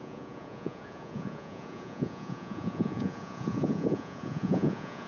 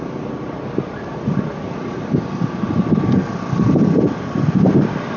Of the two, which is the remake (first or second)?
first